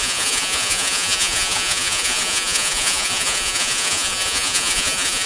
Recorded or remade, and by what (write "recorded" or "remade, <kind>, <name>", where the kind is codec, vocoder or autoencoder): remade, vocoder, Vocos